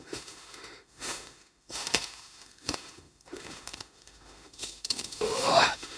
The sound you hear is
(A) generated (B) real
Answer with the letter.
A